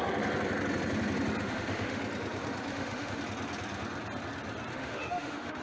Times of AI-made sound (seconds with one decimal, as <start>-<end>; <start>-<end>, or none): 1.4-2.0; 2.7-3.2; 4.7-5.6